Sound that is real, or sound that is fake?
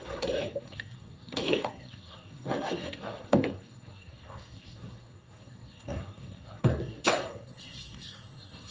fake